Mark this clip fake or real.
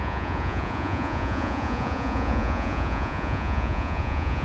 fake